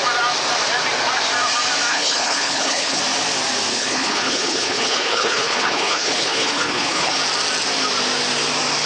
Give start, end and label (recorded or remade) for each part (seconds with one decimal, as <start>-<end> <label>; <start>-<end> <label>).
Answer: 0.0-1.9 recorded; 1.9-3.0 remade; 3.0-3.7 recorded; 3.7-7.2 remade; 7.2-8.9 recorded